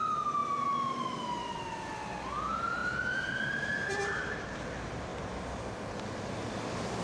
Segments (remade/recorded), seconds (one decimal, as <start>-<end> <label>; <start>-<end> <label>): 0.0-0.4 remade; 0.4-2.4 recorded; 2.4-5.1 remade; 5.1-7.0 recorded